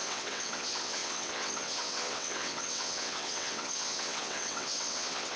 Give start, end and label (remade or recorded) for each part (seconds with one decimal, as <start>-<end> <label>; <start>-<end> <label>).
0.0-5.4 remade